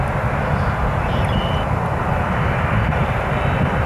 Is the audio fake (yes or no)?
no